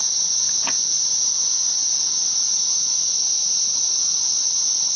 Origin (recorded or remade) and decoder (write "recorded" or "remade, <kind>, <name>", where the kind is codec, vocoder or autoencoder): remade, vocoder, Vocos